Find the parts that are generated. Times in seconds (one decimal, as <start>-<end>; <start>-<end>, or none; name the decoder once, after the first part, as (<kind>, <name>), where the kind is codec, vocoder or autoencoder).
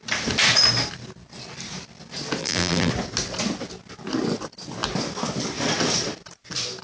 2.4-2.9 (vocoder, BigVGAN v2)